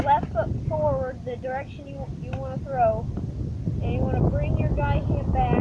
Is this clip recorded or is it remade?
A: recorded